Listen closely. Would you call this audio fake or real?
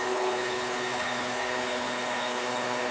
fake